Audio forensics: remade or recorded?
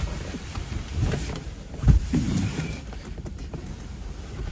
remade